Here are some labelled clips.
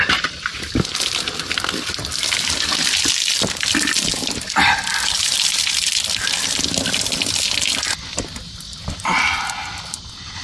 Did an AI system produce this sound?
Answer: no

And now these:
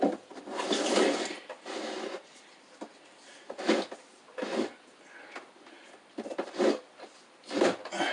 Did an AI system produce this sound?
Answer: no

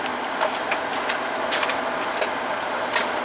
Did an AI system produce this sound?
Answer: no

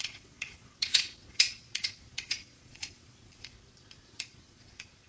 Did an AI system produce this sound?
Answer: yes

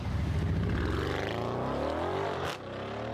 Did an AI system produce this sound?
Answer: no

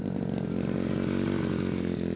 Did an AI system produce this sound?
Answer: no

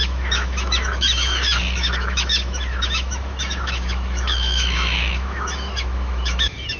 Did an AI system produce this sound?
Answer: yes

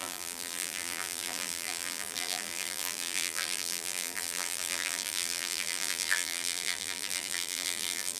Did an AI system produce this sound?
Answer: yes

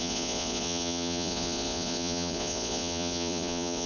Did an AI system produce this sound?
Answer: yes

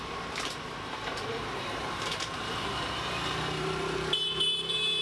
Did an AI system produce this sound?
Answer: yes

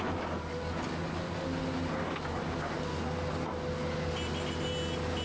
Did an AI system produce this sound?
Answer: no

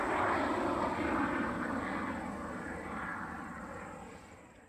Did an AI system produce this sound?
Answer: no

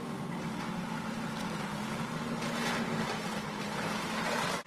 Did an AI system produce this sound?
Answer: no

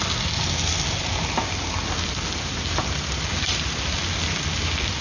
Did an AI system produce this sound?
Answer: no